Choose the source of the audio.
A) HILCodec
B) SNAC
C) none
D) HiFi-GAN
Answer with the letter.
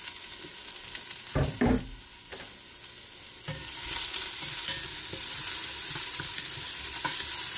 C